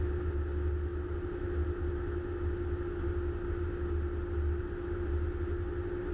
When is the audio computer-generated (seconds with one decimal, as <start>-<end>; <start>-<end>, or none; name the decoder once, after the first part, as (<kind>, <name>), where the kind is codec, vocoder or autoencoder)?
none